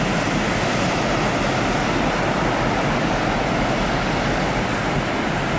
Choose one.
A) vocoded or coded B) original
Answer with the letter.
B